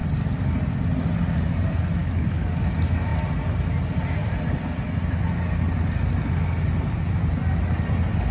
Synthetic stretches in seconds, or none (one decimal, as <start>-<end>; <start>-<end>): 2.0-2.7